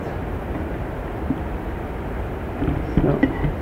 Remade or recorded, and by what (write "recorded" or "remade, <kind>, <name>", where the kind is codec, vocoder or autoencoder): remade, vocoder, BigVGAN v2